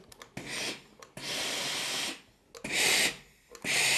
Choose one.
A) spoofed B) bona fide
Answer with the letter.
B